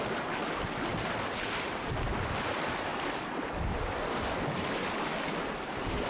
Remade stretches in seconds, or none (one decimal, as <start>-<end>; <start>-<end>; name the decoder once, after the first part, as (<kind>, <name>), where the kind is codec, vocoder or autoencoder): none